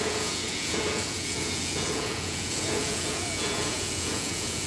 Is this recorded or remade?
remade